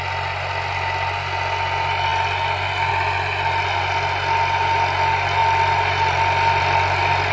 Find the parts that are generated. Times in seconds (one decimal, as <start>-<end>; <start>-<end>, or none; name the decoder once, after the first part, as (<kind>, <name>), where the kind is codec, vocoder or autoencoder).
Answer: 5.4-6.6 (vocoder, BigVGAN v2)